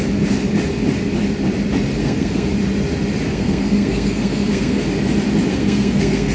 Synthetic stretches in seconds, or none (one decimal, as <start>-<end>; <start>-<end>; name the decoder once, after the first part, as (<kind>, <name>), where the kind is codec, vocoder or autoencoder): 2.0-2.5 (codec, SNAC); 3.3-4.8; 5.5-6.3